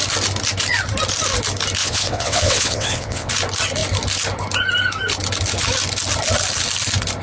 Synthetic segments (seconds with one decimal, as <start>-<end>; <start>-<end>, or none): 1.8-3.3